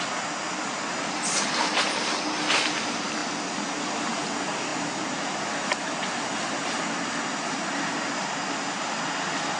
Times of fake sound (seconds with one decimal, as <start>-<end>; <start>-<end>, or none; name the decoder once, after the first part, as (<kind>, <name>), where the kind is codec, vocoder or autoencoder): none